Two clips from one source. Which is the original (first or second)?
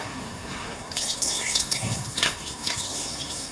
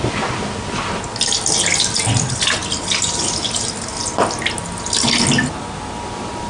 second